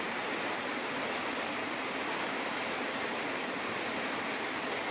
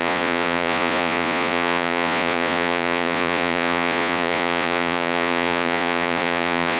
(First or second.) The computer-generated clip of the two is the second